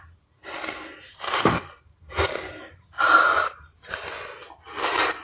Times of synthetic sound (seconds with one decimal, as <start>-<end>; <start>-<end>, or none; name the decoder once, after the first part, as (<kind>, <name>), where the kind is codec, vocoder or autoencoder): 1.0-4.1 (vocoder, BigVGAN v2)